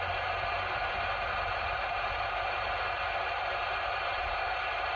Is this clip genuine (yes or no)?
yes